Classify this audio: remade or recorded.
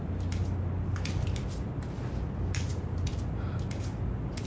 recorded